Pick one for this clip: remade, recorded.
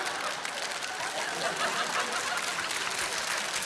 recorded